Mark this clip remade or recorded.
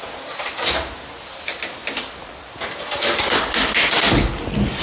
recorded